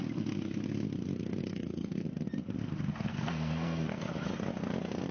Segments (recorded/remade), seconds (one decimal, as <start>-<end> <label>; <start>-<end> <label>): 0.0-1.5 recorded; 1.5-2.0 remade; 2.0-3.1 recorded; 3.1-4.1 remade; 4.1-5.1 recorded